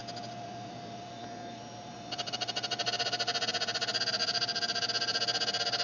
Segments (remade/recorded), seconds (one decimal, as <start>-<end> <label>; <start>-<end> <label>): 0.0-5.8 recorded